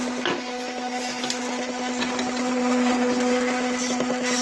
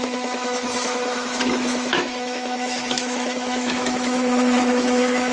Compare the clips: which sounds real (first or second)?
first